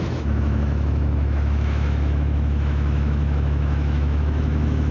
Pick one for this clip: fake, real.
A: fake